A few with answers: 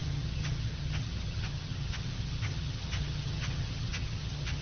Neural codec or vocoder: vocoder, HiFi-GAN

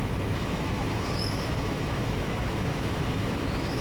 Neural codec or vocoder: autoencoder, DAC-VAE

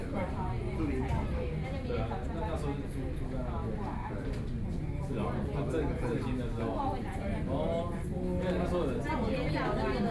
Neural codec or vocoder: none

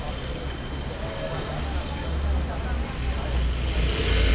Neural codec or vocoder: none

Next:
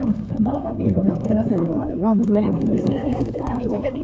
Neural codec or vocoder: codec, SNAC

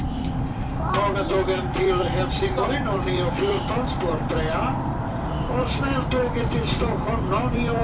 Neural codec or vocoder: vocoder, BigVGAN v2